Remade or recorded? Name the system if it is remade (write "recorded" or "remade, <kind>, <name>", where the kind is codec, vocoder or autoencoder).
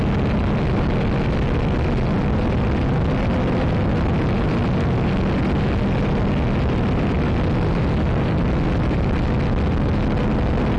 recorded